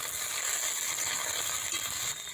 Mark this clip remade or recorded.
recorded